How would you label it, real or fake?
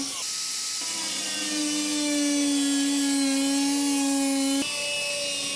real